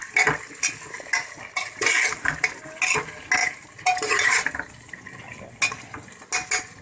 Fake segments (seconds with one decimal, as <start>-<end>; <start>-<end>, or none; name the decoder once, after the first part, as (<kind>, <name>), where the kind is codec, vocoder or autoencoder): 3.4-4.7 (vocoder, BigVGAN v2)